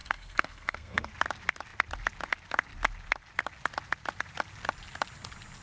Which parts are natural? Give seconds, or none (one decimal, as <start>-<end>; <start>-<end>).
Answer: 1.1-5.6